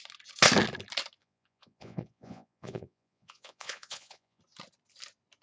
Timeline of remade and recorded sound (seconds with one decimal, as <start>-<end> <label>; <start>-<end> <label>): 0.0-1.2 recorded; 1.2-4.4 remade; 4.4-5.4 recorded